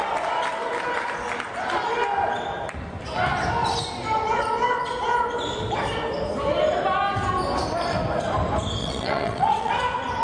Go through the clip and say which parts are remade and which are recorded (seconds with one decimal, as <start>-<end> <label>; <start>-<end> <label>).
0.0-8.8 recorded; 8.8-9.7 remade; 9.7-10.2 recorded